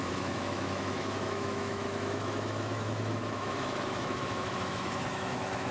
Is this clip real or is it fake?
fake